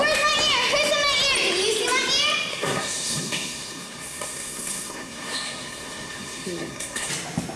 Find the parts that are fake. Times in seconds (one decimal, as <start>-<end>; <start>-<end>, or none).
2.5-7.1